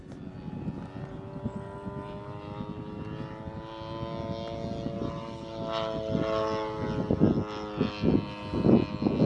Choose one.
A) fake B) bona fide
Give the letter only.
B